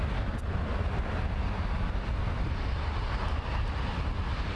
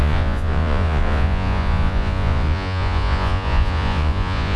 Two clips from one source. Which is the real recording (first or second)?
first